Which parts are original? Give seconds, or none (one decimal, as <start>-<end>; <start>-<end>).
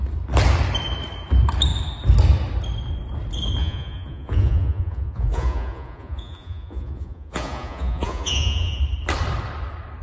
0.0-3.6; 8.8-10.0